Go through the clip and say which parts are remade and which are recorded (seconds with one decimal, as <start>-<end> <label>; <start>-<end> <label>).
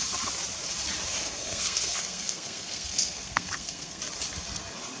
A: 0.0-1.1 recorded; 1.1-4.0 remade; 4.0-5.0 recorded